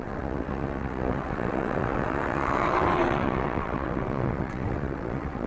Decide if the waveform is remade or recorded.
remade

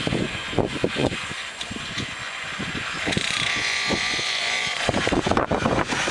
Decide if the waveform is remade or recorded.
remade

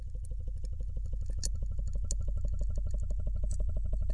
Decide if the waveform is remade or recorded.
recorded